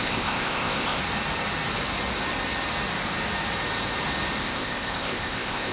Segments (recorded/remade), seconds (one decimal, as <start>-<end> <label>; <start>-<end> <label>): 0.0-1.0 remade; 1.0-4.4 recorded; 4.4-5.7 remade